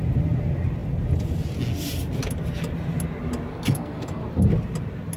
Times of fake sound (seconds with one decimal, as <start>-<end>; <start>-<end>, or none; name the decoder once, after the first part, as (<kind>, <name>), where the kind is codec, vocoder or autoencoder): 3.5-4.2 (codec, SNAC)